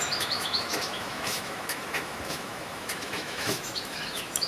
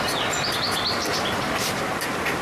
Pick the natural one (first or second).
second